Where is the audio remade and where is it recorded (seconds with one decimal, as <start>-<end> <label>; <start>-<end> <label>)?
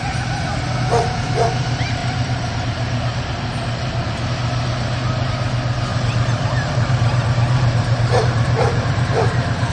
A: 0.0-2.0 recorded; 2.0-4.3 remade; 4.3-5.9 recorded; 5.9-9.7 remade